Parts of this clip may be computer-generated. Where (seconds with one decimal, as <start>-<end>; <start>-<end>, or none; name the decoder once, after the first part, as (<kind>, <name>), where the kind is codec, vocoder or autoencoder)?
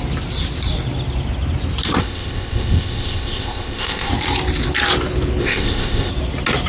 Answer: 2.0-4.1 (codec, ZipCodec); 5.4-6.1